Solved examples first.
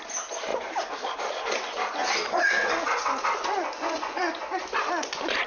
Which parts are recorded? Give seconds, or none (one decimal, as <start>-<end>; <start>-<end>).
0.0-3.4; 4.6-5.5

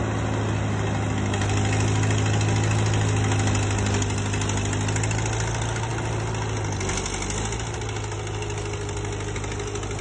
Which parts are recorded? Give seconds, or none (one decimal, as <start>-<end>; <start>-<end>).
0.0-10.0

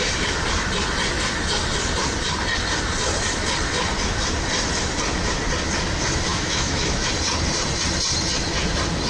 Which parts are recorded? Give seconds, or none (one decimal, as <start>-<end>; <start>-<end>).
0.0-6.3; 7.1-9.1